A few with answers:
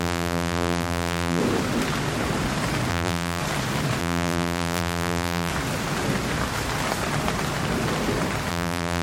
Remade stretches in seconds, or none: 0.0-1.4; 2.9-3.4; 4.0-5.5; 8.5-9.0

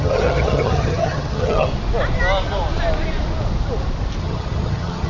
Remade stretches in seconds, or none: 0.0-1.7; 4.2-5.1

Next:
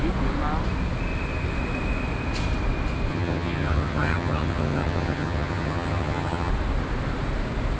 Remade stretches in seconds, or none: 3.1-6.5

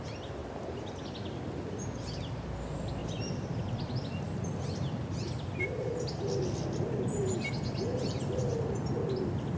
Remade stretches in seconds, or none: 3.0-6.0